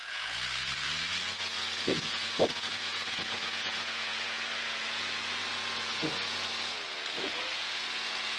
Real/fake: fake